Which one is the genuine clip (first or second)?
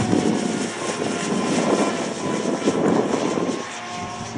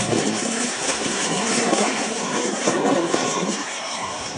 first